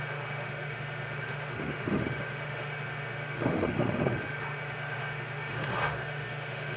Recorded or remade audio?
remade